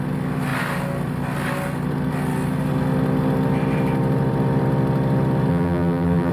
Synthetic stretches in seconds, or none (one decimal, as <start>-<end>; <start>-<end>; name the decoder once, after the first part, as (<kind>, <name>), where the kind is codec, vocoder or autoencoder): 5.5-6.3 (vocoder, BigVGAN v2)